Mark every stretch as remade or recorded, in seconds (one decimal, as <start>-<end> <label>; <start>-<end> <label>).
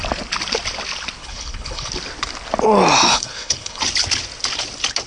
0.0-1.2 recorded; 1.2-1.9 remade; 1.9-3.1 recorded; 3.1-3.8 remade; 3.8-5.1 recorded